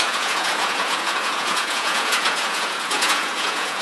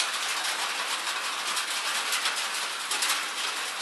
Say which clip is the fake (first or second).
first